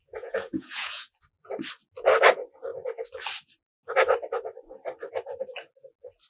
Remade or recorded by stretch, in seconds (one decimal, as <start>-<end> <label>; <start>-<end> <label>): 0.0-1.1 remade; 1.1-6.3 recorded